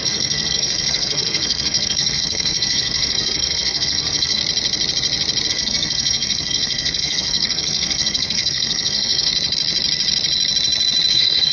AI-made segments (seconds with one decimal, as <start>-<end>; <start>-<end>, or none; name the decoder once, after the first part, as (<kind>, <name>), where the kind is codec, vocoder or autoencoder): 0.0-4.4 (codec, SNAC); 5.5-9.3; 11.1-11.5